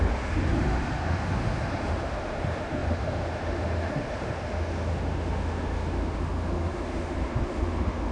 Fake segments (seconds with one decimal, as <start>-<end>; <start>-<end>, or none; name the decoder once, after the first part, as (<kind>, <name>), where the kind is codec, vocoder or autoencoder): 0.0-8.1 (autoencoder, DAC-VAE)